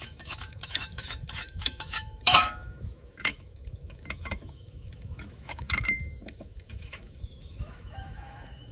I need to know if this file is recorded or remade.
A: remade